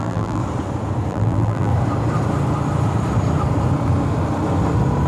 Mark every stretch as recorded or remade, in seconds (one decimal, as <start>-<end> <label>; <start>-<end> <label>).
0.0-0.4 remade; 0.4-1.1 recorded; 1.1-1.7 remade; 1.7-5.1 recorded